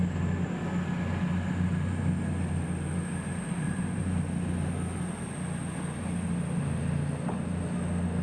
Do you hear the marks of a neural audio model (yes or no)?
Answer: no